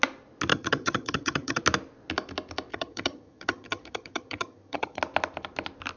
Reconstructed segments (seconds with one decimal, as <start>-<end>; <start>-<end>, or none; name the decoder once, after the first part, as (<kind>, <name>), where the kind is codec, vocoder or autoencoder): 0.5-1.6 (vocoder, HiFi-GAN); 2.7-5.0